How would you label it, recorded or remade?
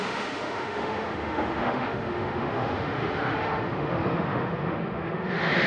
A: remade